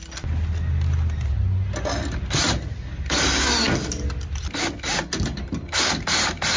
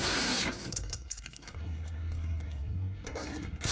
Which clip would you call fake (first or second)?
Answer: second